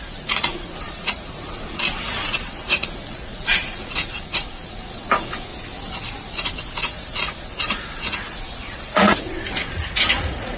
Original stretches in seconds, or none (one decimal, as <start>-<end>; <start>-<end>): 5.5-6.8